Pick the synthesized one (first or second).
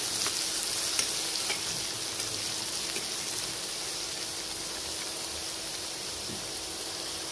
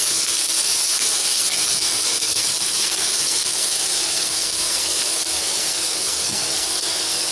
second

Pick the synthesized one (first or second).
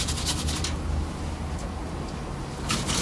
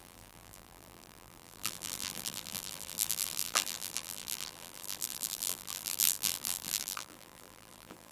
second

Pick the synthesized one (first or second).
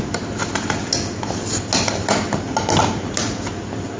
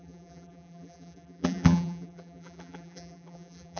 second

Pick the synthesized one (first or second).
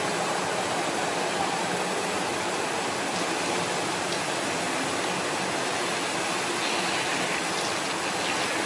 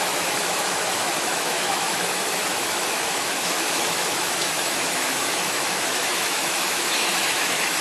second